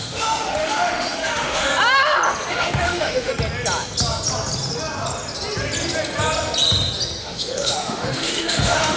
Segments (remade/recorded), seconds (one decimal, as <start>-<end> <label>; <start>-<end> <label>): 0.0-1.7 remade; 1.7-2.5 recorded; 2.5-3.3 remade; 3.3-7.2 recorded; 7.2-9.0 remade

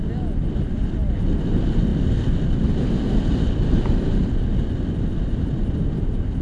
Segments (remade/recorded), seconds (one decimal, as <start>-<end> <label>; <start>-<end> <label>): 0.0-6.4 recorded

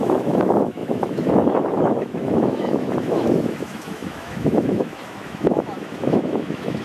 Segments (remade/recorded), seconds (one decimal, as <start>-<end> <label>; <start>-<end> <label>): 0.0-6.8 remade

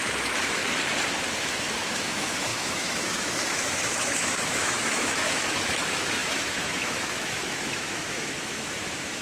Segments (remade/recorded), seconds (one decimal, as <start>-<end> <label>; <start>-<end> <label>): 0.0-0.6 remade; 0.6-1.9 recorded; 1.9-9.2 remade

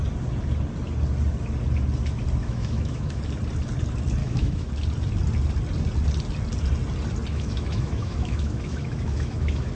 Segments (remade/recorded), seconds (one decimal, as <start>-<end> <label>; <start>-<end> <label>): 0.0-2.4 recorded; 2.4-3.2 remade; 3.2-4.2 recorded; 4.2-4.7 remade; 4.7-7.3 recorded; 7.3-9.7 remade

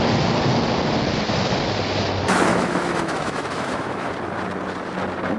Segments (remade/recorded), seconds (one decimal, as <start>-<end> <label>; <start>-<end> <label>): 0.0-2.5 recorded; 2.5-4.1 remade; 4.1-5.4 recorded

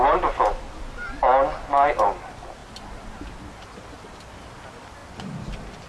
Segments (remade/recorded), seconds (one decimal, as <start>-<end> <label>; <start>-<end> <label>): 0.0-5.9 recorded

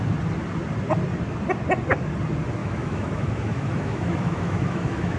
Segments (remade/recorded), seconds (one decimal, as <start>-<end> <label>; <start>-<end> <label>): 0.0-2.6 recorded; 2.6-5.2 remade